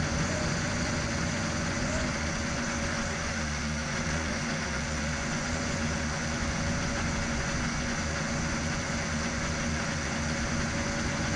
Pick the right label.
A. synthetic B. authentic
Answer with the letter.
A